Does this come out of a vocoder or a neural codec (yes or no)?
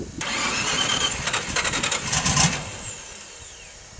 no